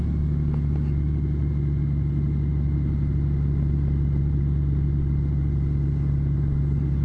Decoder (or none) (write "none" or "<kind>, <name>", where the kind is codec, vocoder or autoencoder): none